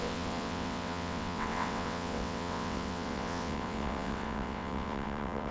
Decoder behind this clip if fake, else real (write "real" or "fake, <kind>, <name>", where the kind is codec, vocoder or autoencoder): fake, vocoder, WaveNeXt